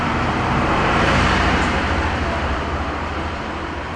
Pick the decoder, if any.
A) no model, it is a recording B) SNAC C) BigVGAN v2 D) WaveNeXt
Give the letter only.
C